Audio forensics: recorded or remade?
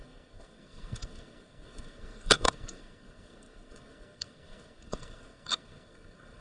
remade